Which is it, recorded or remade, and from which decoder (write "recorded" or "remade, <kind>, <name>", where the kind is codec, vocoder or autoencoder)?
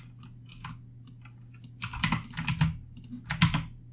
recorded